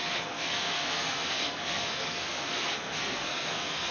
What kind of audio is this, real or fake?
fake